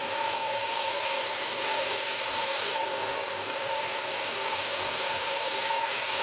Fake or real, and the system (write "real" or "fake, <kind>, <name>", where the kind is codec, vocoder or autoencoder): fake, codec, DAC